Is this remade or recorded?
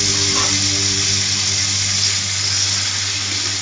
recorded